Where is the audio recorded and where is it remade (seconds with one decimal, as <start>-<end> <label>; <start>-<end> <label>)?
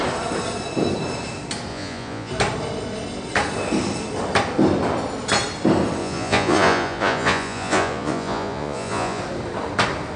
0.0-1.7 recorded; 1.7-2.3 remade; 2.3-6.0 recorded; 6.0-9.2 remade; 9.2-10.2 recorded